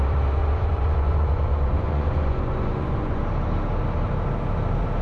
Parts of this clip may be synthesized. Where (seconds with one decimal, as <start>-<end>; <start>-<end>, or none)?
0.4-3.2